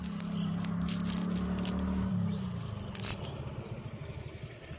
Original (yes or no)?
yes